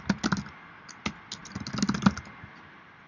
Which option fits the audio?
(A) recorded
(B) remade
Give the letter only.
A